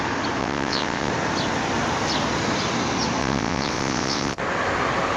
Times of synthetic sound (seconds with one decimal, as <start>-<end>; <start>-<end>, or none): 0.4-1.1; 3.2-4.4